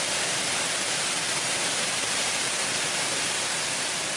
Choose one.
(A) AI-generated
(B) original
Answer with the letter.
B